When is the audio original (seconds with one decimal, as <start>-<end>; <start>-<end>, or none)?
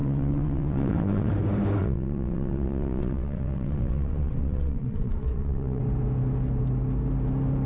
1.3-1.8; 5.8-7.7